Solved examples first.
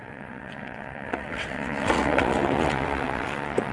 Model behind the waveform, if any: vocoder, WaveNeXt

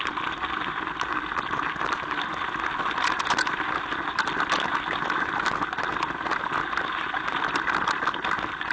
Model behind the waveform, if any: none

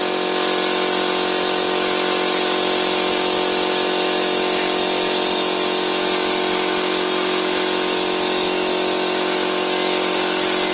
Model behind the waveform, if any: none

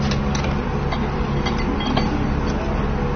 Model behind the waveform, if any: none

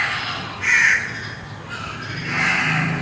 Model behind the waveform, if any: none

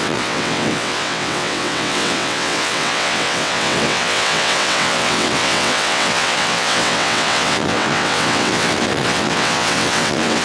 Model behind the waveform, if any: vocoder, WaveNeXt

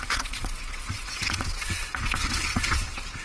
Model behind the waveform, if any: vocoder, WaveNeXt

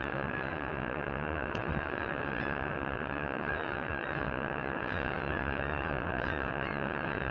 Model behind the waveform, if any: vocoder, WaveNeXt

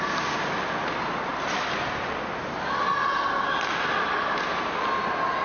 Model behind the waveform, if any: none